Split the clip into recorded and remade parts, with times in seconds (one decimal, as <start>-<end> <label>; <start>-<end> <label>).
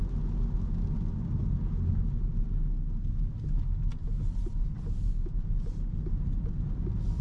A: 0.0-7.2 recorded